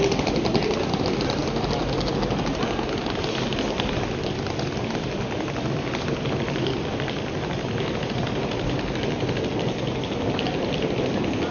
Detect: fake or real real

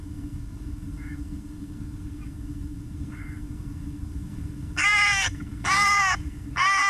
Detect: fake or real fake